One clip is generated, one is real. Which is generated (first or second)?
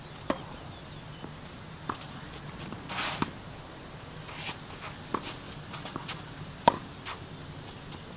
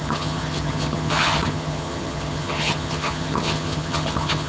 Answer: second